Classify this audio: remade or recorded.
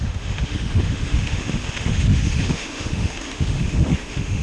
remade